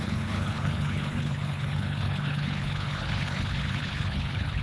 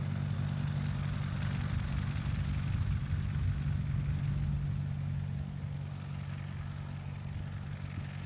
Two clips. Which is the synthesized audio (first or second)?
first